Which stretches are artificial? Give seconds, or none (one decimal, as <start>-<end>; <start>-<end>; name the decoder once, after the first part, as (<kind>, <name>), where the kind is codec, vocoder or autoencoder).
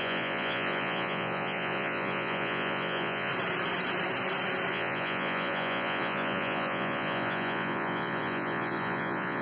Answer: 0.0-3.3 (vocoder, Vocos); 4.7-9.4